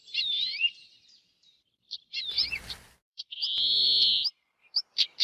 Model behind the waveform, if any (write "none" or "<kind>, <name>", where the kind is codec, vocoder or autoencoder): vocoder, BigVGAN v2